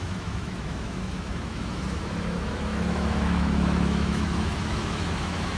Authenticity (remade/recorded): remade